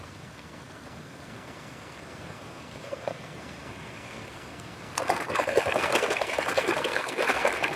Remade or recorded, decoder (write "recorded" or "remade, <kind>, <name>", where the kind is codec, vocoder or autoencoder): remade, codec, SNAC